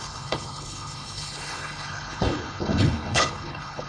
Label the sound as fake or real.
fake